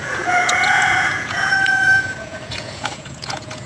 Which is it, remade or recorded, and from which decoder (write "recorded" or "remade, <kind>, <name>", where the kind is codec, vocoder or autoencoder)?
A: remade, vocoder, Vocos